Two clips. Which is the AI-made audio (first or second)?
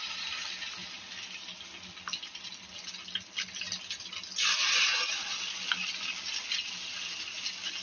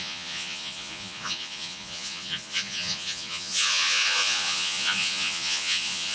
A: second